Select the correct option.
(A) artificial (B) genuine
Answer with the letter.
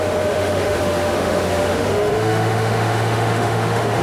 A